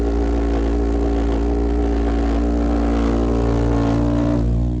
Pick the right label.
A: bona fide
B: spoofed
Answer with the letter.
A